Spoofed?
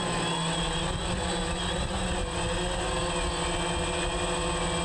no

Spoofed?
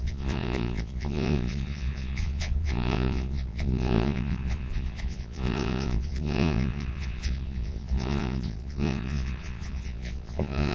yes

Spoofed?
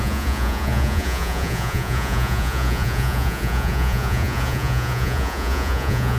yes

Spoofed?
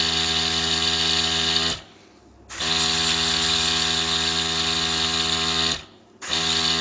no